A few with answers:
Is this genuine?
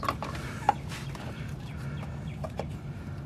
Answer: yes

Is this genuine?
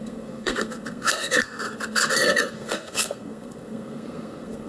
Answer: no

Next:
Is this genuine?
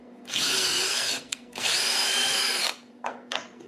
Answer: no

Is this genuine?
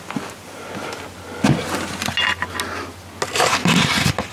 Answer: yes